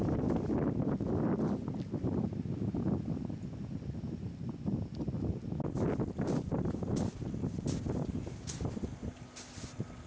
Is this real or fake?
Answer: real